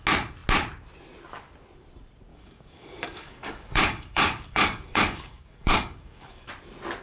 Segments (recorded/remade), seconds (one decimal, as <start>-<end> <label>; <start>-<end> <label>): 0.0-2.3 recorded; 2.3-6.5 remade; 6.5-7.0 recorded